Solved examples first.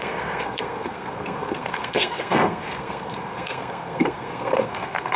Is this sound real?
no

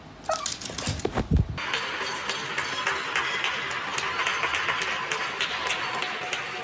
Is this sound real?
yes